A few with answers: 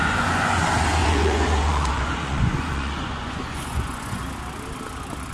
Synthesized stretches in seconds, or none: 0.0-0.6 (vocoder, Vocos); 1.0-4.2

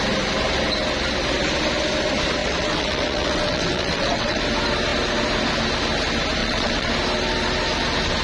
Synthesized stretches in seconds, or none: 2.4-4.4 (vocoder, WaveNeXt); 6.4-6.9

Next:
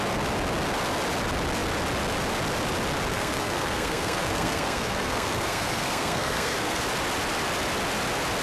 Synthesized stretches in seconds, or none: 3.1-6.8 (codec, SNAC)

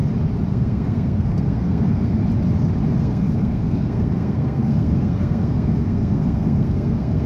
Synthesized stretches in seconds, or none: 0.5-2.2 (codec, SNAC); 3.0-7.3

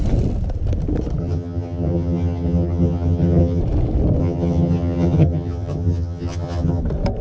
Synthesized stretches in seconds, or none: 1.2-3.6 (vocoder, HiFi-GAN); 4.2-6.8

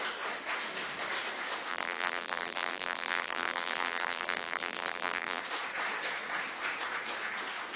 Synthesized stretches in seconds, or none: 1.7-5.4 (vocoder, BigVGAN v2)

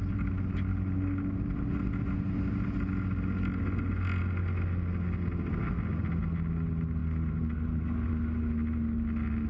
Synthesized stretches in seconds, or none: none